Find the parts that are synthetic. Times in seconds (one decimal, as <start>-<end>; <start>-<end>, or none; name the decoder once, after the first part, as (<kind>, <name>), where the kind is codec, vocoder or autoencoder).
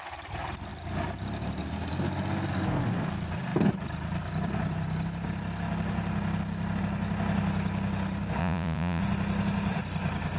8.4-9.0 (vocoder, Vocos)